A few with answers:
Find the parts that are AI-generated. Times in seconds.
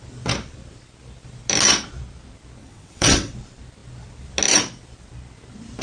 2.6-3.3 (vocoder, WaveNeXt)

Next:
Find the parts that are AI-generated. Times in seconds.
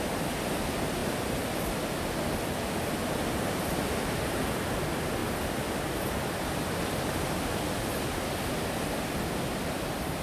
none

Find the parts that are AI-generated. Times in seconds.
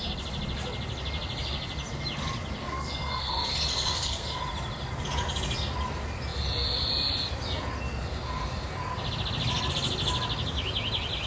2.6-3.3 (codec, SNAC); 3.7-4.3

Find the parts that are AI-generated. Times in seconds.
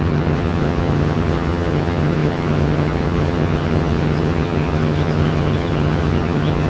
0.0-6.7 (vocoder, HiFi-GAN)